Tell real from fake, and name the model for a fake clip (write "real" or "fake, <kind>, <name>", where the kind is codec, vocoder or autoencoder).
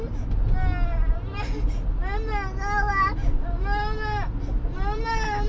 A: real